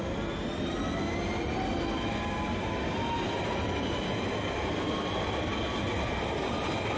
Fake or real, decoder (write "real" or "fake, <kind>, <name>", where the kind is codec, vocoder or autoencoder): real